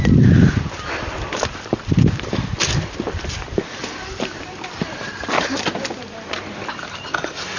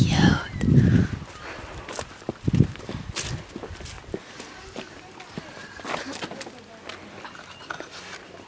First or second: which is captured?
second